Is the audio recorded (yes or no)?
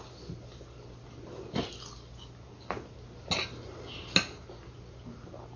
yes